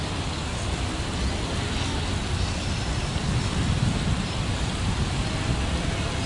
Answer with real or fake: real